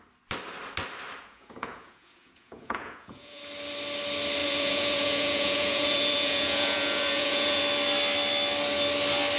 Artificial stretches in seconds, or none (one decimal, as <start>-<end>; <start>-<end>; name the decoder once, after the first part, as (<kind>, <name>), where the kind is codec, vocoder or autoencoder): 1.2-3.4 (vocoder, Vocos); 4.4-7.6